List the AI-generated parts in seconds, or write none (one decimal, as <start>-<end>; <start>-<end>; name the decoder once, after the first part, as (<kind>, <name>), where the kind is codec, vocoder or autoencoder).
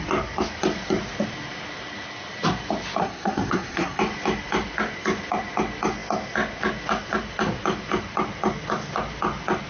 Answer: 3.0-4.0 (codec, SNAC)